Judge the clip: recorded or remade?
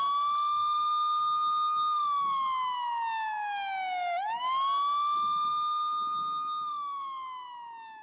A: recorded